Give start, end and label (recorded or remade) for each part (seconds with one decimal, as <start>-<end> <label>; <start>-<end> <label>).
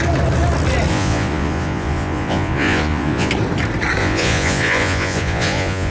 0.0-0.9 recorded; 0.9-3.3 remade; 3.3-4.0 recorded; 4.0-5.9 remade